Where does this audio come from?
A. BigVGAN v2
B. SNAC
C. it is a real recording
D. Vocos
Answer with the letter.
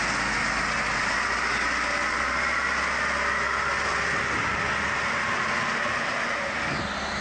C